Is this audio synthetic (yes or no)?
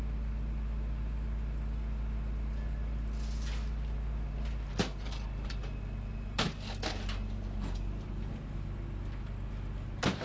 no